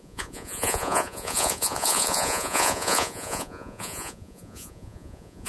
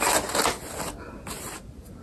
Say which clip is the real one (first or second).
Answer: second